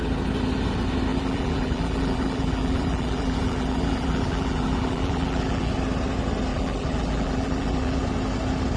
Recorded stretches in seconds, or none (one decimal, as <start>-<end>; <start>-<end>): 0.0-1.1; 5.7-6.5; 8.0-8.8